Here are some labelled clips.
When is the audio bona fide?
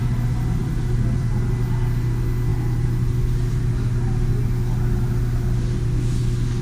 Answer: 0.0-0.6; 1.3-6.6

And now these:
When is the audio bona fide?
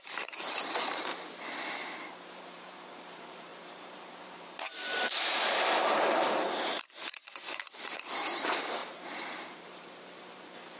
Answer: 1.1-2.3